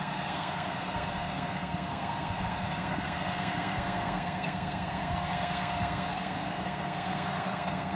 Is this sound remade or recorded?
remade